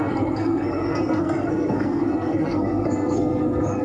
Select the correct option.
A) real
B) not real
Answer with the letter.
B